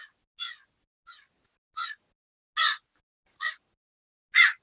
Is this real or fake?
real